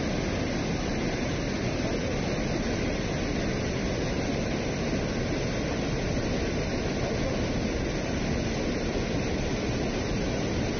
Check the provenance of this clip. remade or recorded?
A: recorded